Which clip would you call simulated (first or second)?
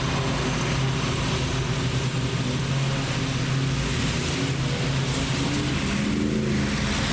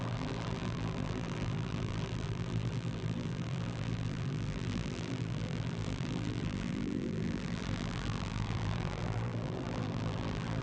second